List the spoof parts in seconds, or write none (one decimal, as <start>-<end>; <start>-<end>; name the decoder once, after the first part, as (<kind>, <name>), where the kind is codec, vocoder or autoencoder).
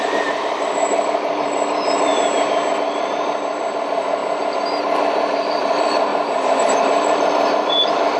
0.0-2.1 (vocoder, BigVGAN v2); 2.7-4.2; 4.8-6.1; 6.6-8.2